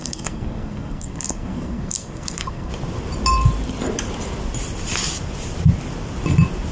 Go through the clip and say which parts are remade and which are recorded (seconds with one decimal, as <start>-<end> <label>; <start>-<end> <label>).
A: 0.0-2.7 remade; 2.7-6.7 recorded